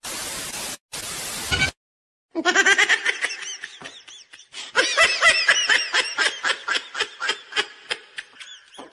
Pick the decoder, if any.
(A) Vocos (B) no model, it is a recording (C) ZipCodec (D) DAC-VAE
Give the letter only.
B